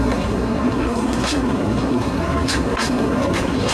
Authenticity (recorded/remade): remade